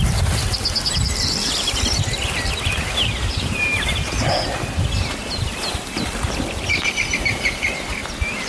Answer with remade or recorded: remade